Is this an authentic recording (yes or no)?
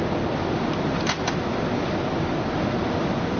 yes